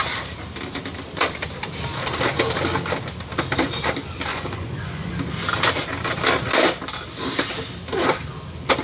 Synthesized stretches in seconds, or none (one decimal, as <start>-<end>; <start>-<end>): 4.3-5.1